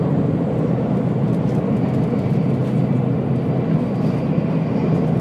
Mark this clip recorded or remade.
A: recorded